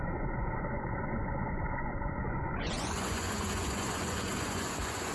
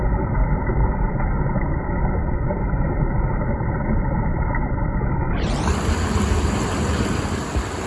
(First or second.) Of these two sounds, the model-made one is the first